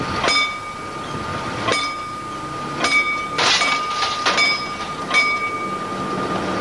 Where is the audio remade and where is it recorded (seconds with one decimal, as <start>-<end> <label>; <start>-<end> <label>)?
0.0-6.6 recorded